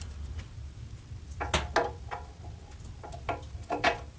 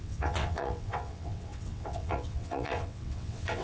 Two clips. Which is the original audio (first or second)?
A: first